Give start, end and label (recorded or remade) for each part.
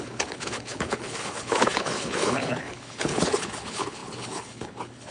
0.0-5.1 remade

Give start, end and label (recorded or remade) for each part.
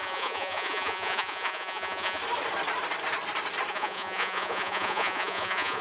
0.0-2.2 remade; 2.2-3.7 recorded; 3.7-5.8 remade